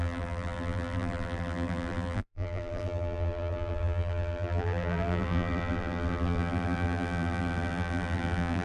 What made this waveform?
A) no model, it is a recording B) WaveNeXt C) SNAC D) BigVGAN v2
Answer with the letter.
D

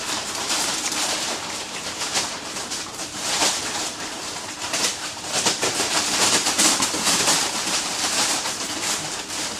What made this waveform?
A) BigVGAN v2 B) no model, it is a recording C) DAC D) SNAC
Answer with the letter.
A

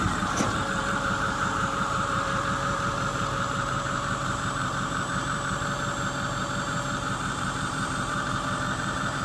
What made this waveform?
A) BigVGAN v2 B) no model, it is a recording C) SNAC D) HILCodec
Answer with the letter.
A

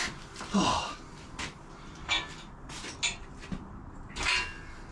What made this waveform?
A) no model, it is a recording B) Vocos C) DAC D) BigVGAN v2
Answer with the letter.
A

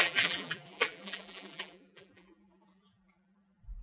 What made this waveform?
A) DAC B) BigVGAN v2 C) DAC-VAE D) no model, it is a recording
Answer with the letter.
B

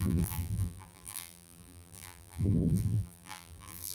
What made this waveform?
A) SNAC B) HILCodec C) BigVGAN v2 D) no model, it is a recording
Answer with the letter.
C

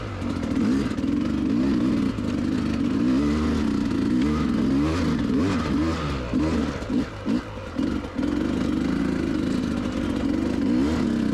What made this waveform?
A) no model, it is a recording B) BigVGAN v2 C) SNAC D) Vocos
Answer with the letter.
A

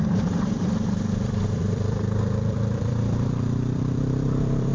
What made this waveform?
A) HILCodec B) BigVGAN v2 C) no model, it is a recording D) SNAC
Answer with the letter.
B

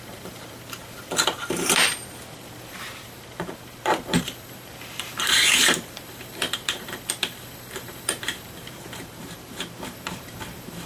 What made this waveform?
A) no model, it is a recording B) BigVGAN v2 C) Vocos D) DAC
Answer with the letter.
B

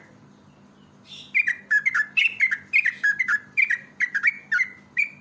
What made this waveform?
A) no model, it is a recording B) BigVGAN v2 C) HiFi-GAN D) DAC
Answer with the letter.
A